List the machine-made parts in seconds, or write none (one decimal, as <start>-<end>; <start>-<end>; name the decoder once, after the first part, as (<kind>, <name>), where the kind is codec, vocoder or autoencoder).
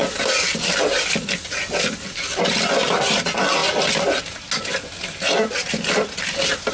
none